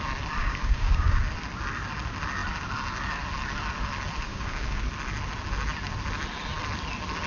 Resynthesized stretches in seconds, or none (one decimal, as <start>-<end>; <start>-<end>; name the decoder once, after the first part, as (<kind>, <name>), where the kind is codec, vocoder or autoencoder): 0.4-1.2 (codec, DAC); 4.3-4.8